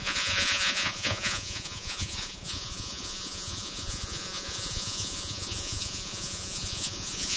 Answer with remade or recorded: remade